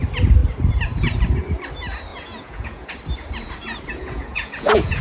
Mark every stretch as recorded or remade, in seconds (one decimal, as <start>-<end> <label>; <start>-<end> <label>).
0.0-2.1 recorded; 2.1-2.9 remade; 2.9-3.9 recorded; 3.9-5.0 remade